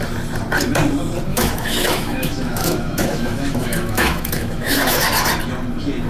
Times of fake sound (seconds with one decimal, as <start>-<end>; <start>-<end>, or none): 1.3-5.0